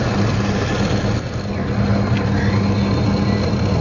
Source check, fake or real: real